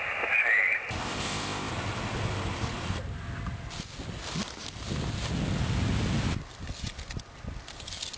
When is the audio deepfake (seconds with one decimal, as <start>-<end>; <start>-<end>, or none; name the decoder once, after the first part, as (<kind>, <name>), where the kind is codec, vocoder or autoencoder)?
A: 1.0-1.7 (codec, ZipCodec)